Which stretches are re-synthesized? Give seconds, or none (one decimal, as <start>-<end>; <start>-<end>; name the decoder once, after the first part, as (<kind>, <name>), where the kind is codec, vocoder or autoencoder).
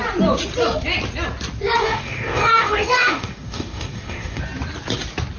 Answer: 1.8-4.4 (codec, DAC)